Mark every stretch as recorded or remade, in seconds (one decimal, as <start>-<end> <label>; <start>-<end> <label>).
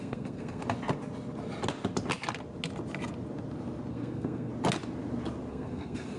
0.0-0.6 remade; 0.6-3.9 recorded; 3.9-4.5 remade; 4.5-5.5 recorded; 5.5-6.2 remade